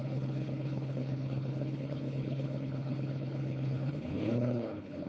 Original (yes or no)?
no